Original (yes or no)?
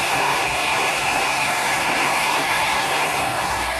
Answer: no